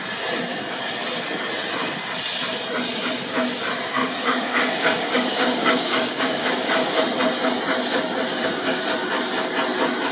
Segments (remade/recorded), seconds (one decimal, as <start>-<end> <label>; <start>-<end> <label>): 0.0-4.0 recorded; 4.0-7.0 remade; 7.0-8.3 recorded; 8.3-8.8 remade; 8.8-10.1 recorded